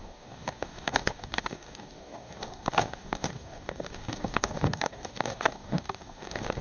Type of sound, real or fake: fake